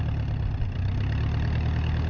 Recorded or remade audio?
recorded